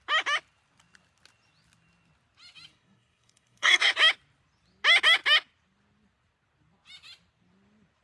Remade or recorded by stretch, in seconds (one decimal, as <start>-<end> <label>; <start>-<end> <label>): 0.0-2.7 recorded; 2.7-3.9 remade; 3.9-8.0 recorded

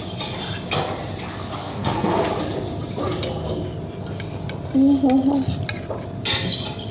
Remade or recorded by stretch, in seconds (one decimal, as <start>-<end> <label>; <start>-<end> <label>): 0.0-1.6 recorded; 1.6-2.2 remade; 2.2-6.9 recorded